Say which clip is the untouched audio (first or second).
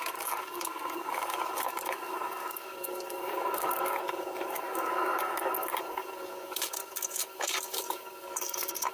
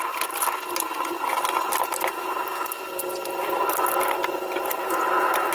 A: second